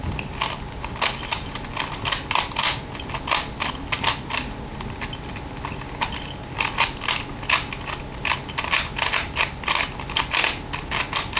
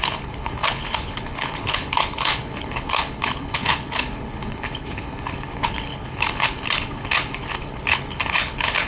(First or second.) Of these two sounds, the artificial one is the second